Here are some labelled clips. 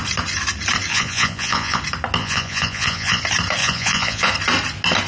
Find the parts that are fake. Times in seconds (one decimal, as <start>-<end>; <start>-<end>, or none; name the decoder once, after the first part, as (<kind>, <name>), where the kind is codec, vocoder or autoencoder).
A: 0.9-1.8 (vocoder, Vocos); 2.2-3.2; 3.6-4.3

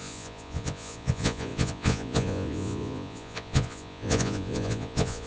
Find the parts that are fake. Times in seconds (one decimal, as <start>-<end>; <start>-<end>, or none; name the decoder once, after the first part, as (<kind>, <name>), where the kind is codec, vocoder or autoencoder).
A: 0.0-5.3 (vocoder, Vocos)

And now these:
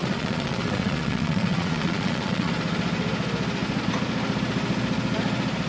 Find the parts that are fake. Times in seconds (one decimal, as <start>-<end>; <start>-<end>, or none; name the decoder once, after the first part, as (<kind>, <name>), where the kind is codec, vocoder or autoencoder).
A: 0.0-2.5 (vocoder, Vocos)

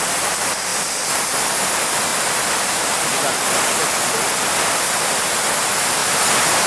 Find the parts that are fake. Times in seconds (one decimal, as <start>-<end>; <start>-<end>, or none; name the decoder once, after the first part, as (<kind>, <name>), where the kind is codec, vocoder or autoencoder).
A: none

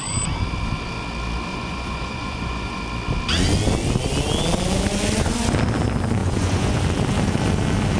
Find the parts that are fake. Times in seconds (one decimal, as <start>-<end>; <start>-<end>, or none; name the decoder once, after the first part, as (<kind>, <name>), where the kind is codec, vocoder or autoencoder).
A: 1.5-2.8 (vocoder, Vocos); 6.2-6.8

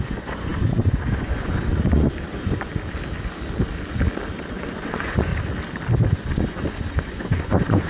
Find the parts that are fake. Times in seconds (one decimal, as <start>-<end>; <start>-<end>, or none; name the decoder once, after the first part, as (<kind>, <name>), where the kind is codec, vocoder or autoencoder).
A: 0.0-2.7 (vocoder, Vocos); 4.5-5.3; 6.1-7.9

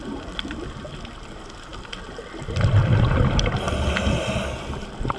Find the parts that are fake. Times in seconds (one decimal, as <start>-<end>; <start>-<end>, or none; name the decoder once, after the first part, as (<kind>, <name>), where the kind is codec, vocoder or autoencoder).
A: none

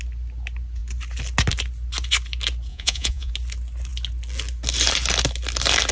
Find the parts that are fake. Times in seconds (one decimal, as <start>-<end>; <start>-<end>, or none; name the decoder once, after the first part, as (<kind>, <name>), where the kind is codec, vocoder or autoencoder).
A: 2.7-3.3 (vocoder, Vocos)